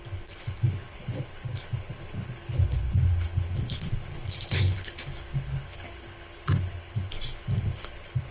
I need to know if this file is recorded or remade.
remade